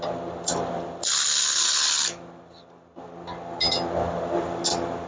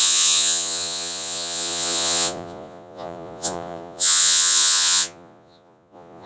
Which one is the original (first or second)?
first